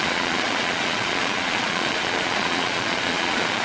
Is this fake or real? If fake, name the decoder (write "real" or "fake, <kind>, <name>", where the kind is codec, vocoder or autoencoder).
fake, vocoder, Vocos